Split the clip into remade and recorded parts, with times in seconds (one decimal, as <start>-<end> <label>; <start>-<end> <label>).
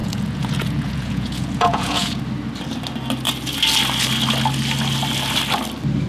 0.0-2.2 remade; 2.2-6.1 recorded